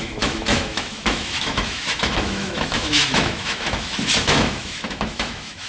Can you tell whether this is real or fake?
fake